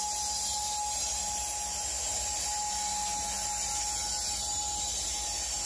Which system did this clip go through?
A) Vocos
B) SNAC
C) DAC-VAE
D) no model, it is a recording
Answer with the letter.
D